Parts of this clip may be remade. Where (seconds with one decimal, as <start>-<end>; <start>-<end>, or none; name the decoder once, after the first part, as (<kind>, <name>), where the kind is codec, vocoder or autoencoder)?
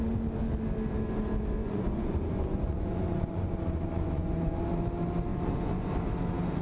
1.6-4.6 (vocoder, Vocos); 5.3-5.9